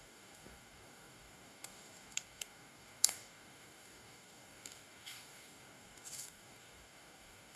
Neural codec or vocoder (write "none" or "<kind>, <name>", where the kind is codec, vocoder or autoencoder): codec, DAC